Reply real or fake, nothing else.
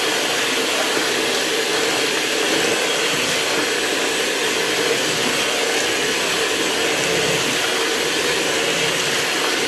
real